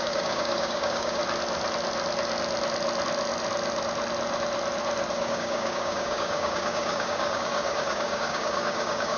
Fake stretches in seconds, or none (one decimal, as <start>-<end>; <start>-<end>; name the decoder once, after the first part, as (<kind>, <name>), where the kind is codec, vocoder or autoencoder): 0.0-1.2 (codec, DAC); 5.1-9.2

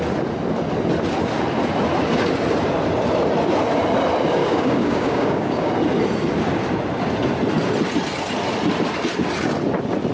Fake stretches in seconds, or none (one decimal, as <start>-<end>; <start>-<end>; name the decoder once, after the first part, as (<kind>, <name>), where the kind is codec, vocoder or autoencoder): 4.4-5.7 (codec, DAC)

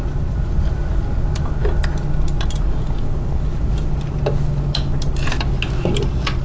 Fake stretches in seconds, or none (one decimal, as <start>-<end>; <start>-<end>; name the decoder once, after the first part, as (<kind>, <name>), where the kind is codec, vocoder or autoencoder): none

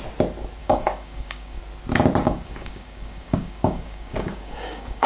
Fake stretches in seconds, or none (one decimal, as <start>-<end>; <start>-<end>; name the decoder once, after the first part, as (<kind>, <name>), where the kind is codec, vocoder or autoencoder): 0.6-1.6 (codec, DAC); 2.2-5.1

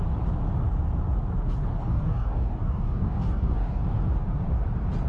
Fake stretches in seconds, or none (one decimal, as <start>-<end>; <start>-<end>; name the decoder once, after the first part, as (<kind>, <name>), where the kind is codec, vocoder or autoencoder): 1.8-3.8 (codec, DAC)

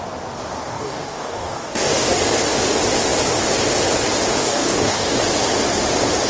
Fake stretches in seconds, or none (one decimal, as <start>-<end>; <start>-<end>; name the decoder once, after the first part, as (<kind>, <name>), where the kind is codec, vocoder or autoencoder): 0.7-2.2 (codec, DAC); 4.4-5.2

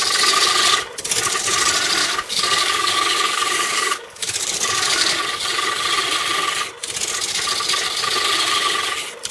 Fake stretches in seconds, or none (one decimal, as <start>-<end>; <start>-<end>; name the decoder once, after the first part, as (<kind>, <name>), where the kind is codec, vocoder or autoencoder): 2.0-5.2 (codec, DAC)

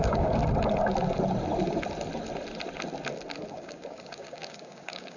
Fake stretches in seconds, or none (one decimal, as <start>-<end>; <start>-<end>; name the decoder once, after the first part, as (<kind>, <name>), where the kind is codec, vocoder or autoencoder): 0.0-0.4 (codec, DAC); 3.5-5.2